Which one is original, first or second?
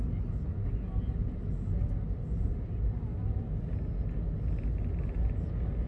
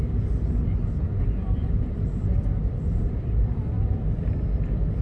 first